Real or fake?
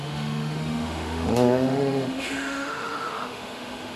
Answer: fake